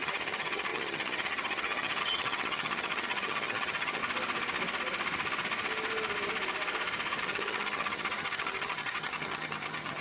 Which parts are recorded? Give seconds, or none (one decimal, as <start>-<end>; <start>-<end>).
4.0-7.2